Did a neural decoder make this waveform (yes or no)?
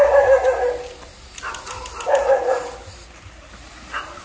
no